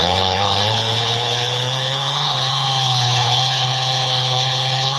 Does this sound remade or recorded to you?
remade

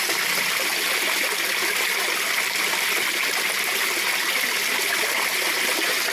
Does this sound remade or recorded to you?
recorded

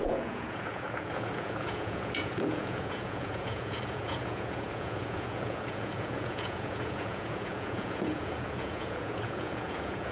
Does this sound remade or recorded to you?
remade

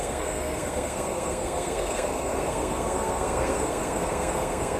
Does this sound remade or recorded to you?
remade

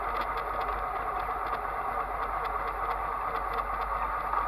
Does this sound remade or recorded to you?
recorded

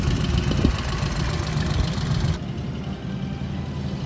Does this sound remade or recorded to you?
recorded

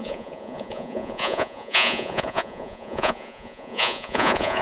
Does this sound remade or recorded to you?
remade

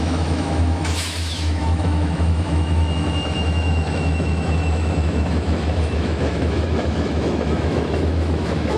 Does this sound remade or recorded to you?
remade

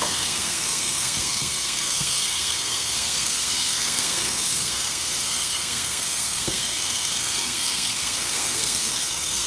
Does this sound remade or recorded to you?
remade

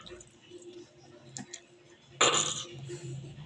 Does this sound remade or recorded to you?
recorded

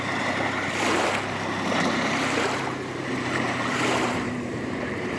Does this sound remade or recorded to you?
remade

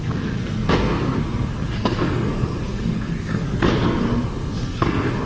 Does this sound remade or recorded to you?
remade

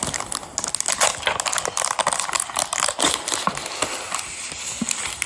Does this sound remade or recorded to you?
recorded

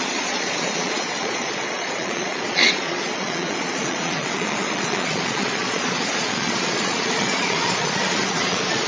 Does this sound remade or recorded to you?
remade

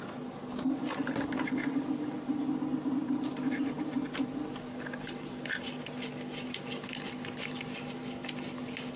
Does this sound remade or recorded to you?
recorded